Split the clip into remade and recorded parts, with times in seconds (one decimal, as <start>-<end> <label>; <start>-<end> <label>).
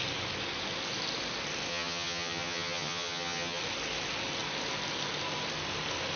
0.0-1.7 recorded; 1.7-3.6 remade; 3.6-6.2 recorded